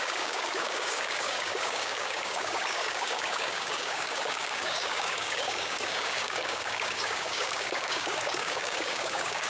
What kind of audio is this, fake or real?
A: fake